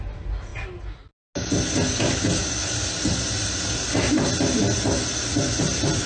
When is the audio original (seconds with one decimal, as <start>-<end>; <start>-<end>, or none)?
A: 0.0-6.1